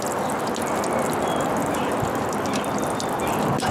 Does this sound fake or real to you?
real